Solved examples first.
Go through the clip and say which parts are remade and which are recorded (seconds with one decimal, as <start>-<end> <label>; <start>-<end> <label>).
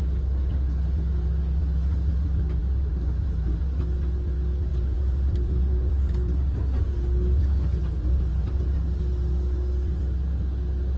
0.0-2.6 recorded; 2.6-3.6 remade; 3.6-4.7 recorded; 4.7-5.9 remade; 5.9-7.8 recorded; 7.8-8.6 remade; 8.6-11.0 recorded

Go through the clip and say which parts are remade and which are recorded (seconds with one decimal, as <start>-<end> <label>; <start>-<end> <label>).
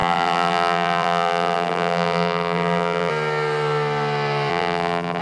0.0-3.1 remade; 3.1-4.5 recorded; 4.5-5.2 remade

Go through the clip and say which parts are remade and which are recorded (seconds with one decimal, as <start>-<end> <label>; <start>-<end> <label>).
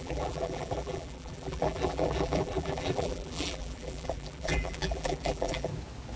0.0-5.7 remade; 5.7-6.2 recorded